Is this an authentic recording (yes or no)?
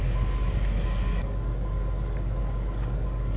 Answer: no